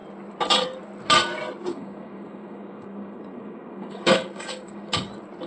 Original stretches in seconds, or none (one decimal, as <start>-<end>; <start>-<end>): 0.0-1.7; 5.0-5.5